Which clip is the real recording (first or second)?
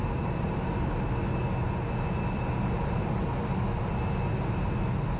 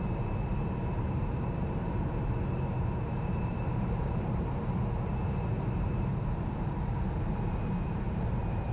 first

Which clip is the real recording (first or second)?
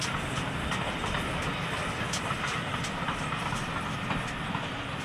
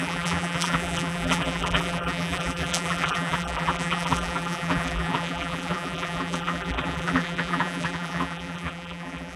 first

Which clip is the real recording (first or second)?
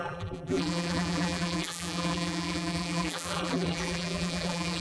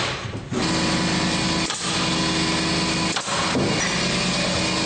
second